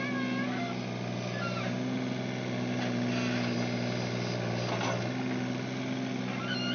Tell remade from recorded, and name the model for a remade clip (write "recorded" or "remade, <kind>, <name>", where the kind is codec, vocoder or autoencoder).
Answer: recorded